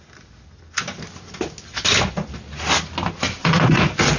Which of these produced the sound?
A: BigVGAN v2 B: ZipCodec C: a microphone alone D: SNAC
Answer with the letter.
C